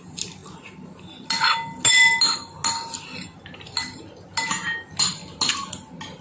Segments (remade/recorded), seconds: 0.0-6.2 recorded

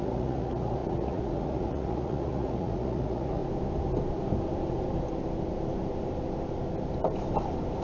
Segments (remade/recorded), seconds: 0.0-3.4 remade; 3.4-7.8 recorded

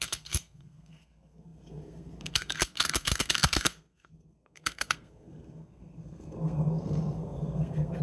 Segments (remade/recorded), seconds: 0.0-8.0 remade

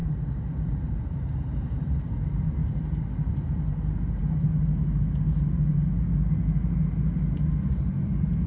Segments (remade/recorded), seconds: 0.0-2.0 remade; 2.0-2.6 recorded; 2.6-3.3 remade; 3.3-8.5 recorded

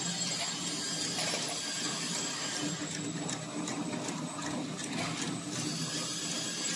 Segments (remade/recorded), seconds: 0.0-6.8 recorded